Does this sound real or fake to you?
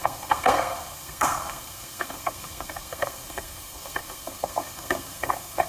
fake